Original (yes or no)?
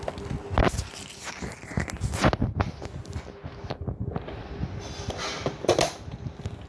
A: yes